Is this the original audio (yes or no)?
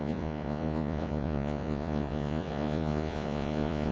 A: no